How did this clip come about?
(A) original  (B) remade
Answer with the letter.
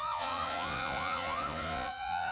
B